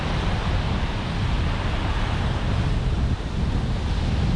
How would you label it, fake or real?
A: real